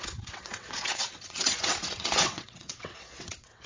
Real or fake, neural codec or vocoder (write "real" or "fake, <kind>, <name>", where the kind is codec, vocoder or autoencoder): fake, vocoder, WaveNeXt